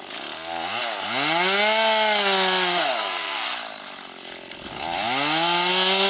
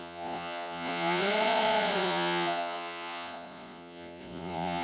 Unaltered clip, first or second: first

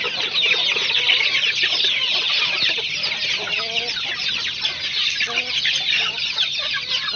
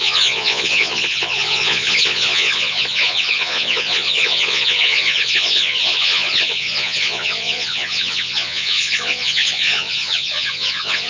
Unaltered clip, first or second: first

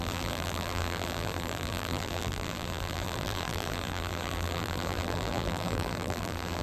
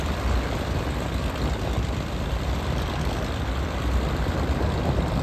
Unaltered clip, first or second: second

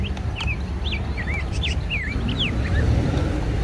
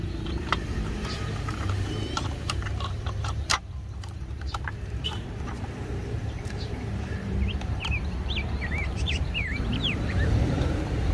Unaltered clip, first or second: first